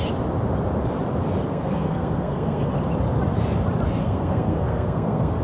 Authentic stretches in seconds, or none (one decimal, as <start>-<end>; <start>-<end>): 0.0-1.5; 2.7-4.0